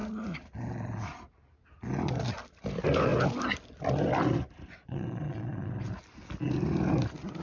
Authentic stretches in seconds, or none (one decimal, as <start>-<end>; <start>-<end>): 0.0-4.8; 5.7-7.4